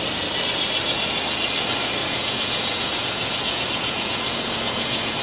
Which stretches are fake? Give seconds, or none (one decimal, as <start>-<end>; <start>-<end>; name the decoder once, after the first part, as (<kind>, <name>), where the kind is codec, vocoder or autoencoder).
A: 2.0-5.2 (vocoder, Vocos)